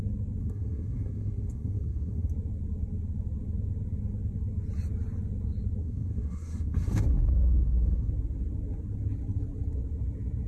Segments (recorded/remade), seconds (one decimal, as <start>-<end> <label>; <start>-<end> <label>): 0.0-0.4 recorded; 0.4-2.3 remade; 2.3-5.8 recorded; 5.8-8.1 remade; 8.1-10.5 recorded